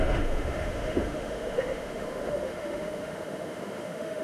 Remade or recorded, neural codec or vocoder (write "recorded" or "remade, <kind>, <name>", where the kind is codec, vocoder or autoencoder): remade, autoencoder, DAC-VAE